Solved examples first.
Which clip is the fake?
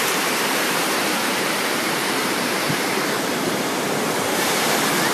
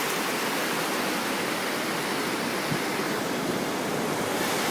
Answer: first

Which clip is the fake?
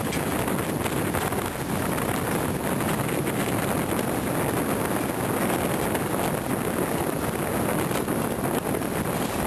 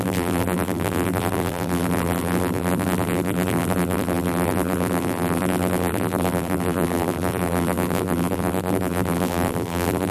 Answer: second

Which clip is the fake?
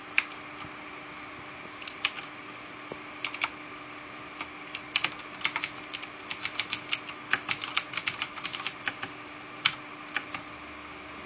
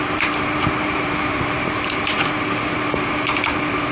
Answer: second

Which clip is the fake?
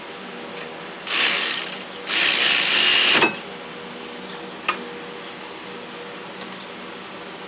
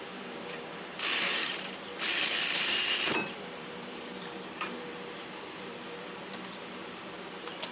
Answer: second